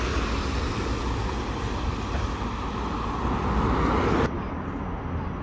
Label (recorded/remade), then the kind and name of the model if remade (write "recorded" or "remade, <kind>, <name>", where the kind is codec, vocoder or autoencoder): recorded